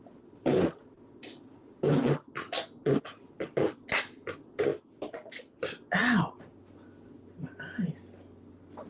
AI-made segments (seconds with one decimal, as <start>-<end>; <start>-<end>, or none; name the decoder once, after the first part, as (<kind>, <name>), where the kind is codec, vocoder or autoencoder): none

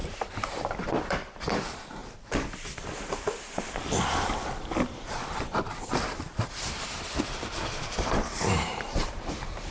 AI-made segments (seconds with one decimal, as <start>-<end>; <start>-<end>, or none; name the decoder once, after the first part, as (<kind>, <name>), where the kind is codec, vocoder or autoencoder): 0.0-2.0 (vocoder, BigVGAN v2); 7.2-9.7